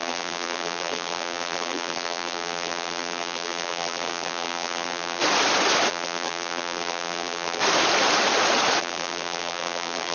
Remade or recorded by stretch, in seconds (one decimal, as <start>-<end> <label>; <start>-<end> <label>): 0.0-5.2 remade; 5.2-5.9 recorded; 5.9-7.6 remade; 7.6-8.8 recorded; 8.8-10.1 remade